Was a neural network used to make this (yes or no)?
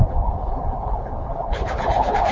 yes